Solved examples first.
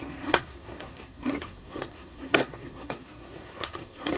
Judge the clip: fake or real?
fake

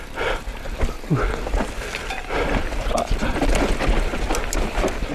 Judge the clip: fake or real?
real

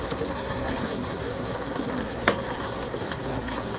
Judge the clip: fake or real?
fake